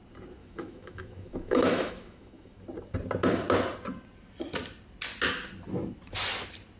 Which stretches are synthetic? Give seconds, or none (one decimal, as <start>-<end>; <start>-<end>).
0.4-2.6